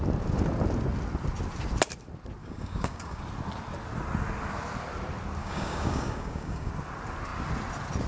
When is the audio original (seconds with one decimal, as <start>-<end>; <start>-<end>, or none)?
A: 0.0-2.4; 3.2-5.4; 6.7-8.1